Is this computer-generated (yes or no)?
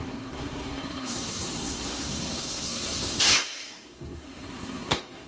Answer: yes